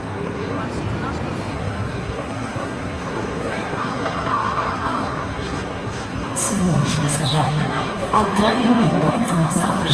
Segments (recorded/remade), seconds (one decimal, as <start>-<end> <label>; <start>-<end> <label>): 0.0-0.6 remade; 0.6-1.5 recorded; 1.5-9.9 remade